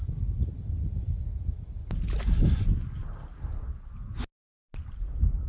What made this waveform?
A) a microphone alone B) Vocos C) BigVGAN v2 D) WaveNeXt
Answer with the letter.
A